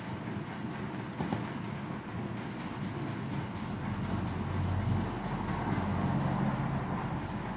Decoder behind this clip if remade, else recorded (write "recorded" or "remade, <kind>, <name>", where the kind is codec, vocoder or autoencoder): recorded